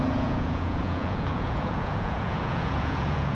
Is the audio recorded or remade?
remade